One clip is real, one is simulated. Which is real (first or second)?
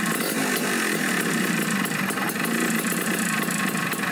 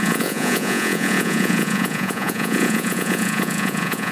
first